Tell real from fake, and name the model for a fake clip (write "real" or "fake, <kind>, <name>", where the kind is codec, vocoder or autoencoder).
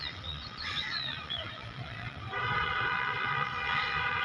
fake, vocoder, WaveNeXt